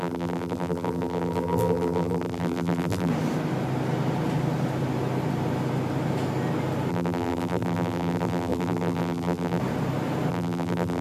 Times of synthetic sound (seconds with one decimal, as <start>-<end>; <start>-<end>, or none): 0.0-3.1; 6.9-9.6; 10.3-11.0